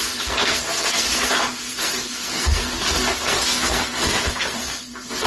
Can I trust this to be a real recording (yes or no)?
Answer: no